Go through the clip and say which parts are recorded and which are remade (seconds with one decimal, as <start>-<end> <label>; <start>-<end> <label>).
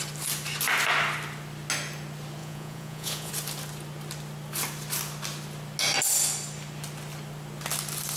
0.0-2.4 recorded; 2.4-3.3 remade; 3.3-8.2 recorded